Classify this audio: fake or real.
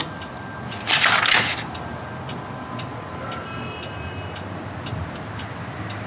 real